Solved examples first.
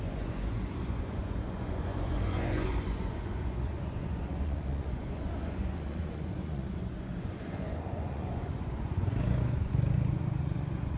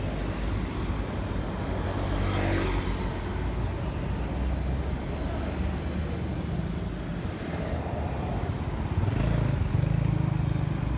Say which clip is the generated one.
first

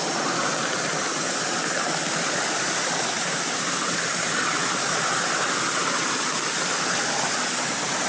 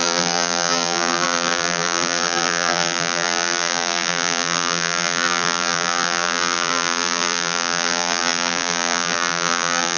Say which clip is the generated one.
second